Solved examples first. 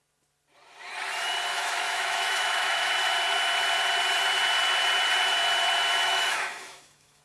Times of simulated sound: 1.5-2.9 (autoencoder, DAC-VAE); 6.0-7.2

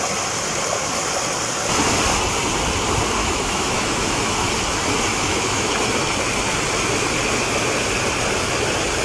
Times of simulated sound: 3.2-4.5 (autoencoder, DAC-VAE); 5.1-5.7

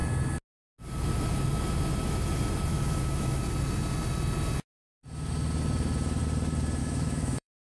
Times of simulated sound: 2.7-3.4 (autoencoder, DAC-VAE); 6.8-7.6

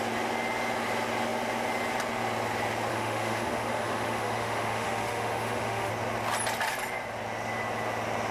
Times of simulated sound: 2.9-5.9 (autoencoder, DAC-VAE)